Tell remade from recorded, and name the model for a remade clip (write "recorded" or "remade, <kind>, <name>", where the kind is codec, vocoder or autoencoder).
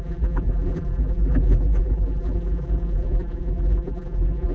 remade, vocoder, BigVGAN v2